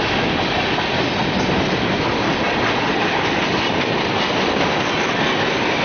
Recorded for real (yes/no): yes